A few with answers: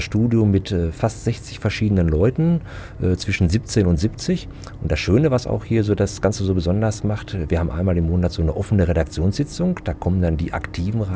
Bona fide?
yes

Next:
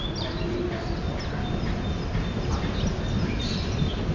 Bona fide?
yes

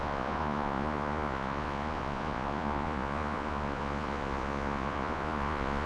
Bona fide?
no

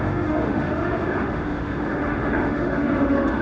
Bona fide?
no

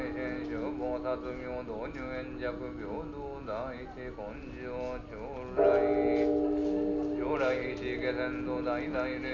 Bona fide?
yes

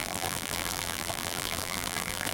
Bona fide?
no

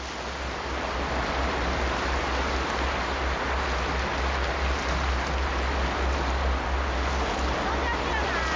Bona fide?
yes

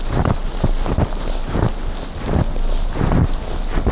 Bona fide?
yes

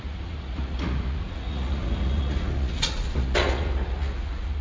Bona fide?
no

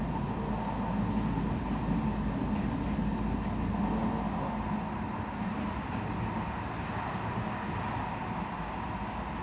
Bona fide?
yes